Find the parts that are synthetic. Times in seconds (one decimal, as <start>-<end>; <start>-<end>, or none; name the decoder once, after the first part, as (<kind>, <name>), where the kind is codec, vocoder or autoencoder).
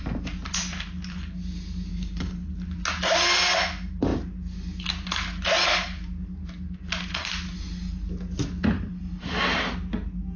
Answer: 1.9-2.5 (codec, HILCodec)